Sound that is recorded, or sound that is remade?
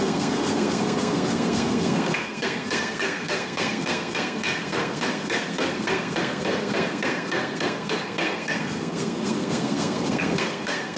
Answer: remade